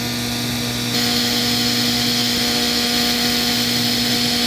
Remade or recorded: recorded